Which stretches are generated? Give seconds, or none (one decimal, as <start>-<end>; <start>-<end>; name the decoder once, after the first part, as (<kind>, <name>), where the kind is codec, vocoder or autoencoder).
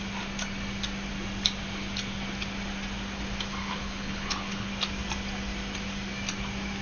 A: 3.6-4.7 (codec, HILCodec)